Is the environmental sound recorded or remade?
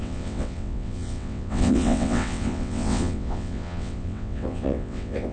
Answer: remade